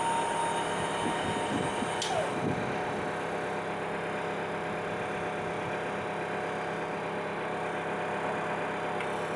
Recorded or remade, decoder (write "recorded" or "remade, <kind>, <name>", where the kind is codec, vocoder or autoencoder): recorded